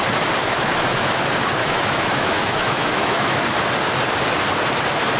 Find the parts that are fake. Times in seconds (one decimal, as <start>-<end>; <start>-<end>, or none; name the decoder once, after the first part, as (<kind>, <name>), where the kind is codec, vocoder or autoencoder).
0.4-1.2 (autoencoder, DAC-VAE); 1.6-3.4